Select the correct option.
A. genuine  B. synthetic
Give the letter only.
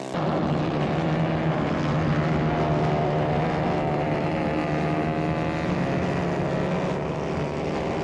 A